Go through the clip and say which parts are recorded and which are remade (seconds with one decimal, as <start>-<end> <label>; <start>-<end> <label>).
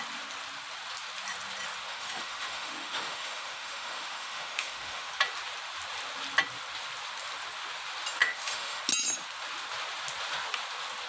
0.0-1.9 recorded; 1.9-5.1 remade; 5.1-8.2 recorded; 8.2-8.8 remade; 8.8-11.1 recorded